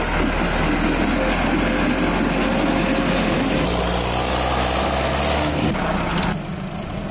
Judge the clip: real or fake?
real